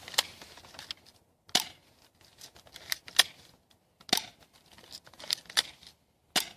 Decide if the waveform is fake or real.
real